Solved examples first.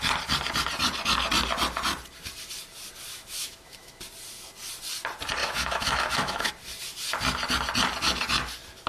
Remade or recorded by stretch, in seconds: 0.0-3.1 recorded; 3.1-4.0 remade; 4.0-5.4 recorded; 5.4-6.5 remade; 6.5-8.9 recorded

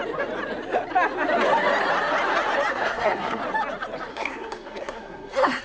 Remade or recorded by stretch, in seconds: 0.0-2.7 recorded; 2.7-3.4 remade; 3.4-4.1 recorded; 4.1-5.6 remade